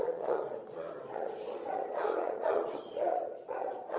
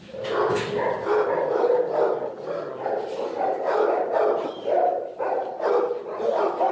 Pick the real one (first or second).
second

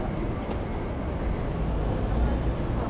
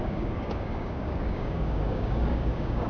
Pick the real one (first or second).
first